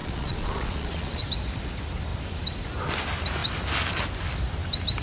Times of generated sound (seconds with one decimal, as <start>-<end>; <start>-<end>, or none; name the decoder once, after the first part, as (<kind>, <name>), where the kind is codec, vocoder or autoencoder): 0.0-1.2 (vocoder, Vocos)